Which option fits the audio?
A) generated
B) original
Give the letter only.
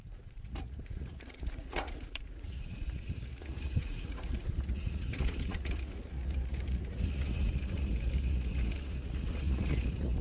A